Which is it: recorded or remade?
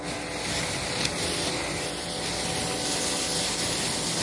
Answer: recorded